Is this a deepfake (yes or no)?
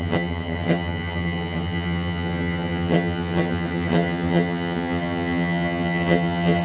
yes